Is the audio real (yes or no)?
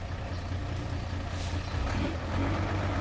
yes